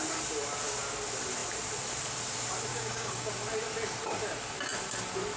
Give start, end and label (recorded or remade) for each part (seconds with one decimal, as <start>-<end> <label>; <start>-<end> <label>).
0.0-2.7 recorded; 2.7-3.3 remade; 3.3-5.4 recorded